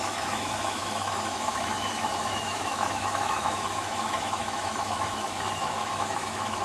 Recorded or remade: remade